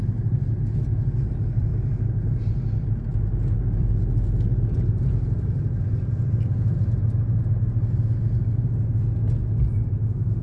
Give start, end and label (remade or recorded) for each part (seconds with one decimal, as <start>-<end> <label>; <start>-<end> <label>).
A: 0.0-10.4 recorded